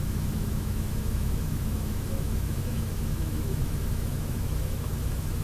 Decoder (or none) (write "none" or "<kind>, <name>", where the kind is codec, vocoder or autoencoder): autoencoder, DAC-VAE